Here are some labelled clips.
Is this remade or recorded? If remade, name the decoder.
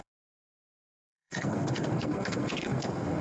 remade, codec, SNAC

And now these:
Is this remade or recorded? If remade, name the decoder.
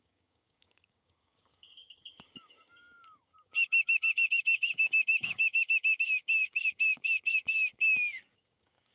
remade, codec, DAC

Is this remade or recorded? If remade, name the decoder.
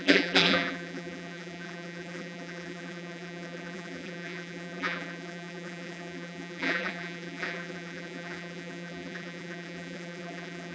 remade, vocoder, BigVGAN v2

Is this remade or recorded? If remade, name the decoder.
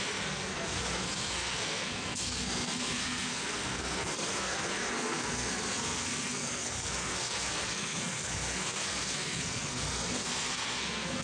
remade, codec, SNAC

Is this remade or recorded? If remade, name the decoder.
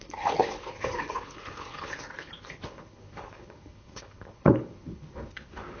remade, codec, HILCodec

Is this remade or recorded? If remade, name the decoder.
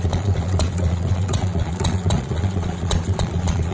remade, vocoder, Vocos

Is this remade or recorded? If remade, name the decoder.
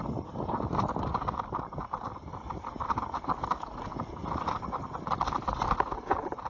recorded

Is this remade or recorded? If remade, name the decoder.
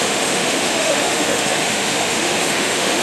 remade, autoencoder, DAC-VAE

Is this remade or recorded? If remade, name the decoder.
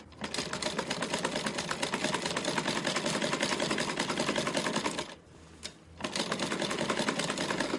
recorded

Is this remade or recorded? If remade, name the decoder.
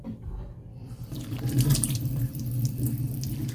remade, vocoder, BigVGAN v2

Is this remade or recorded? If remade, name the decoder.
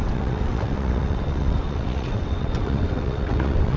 remade, vocoder, WaveNeXt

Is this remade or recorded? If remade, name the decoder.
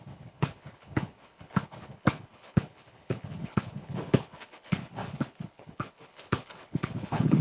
remade, codec, HILCodec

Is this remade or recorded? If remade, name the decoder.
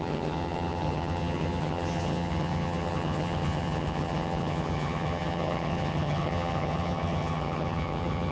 remade, vocoder, HiFi-GAN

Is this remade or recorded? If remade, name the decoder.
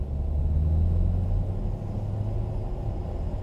recorded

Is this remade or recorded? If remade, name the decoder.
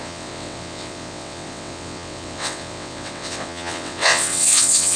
remade, vocoder, WaveNeXt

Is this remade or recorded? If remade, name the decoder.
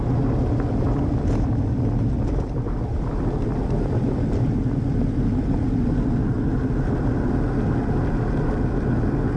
recorded